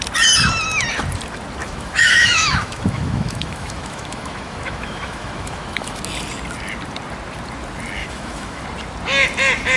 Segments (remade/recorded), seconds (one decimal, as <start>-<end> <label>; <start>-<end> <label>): 0.0-1.6 recorded; 1.6-6.0 remade; 6.0-8.0 recorded; 8.0-8.6 remade; 8.6-9.8 recorded